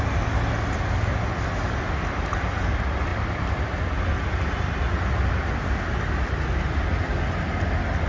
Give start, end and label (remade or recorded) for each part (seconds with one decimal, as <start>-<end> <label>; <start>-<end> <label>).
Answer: 0.0-8.1 recorded